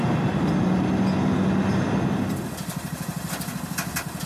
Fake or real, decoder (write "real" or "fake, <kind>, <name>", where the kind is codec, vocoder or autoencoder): real